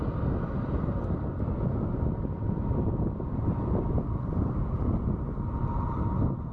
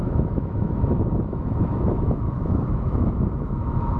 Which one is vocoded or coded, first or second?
second